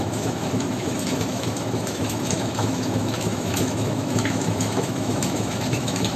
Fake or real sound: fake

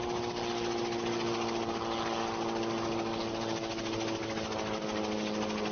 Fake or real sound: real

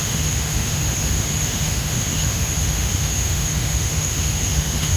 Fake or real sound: fake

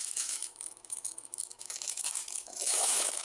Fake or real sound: fake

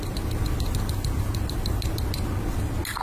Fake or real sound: real